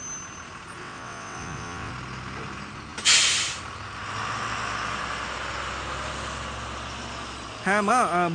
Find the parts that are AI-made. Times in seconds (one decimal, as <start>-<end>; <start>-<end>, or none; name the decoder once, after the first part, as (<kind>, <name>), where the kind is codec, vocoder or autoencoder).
0.8-1.9 (vocoder, WaveNeXt)